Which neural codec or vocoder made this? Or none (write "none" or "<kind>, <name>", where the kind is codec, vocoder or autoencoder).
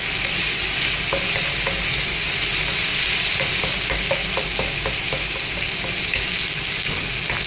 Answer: none